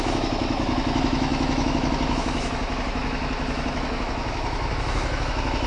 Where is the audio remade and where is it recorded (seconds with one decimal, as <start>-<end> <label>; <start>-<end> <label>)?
0.0-5.7 remade